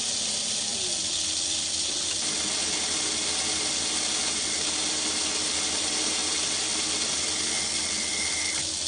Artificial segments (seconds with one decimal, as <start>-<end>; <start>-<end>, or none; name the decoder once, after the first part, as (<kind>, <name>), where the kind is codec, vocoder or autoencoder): none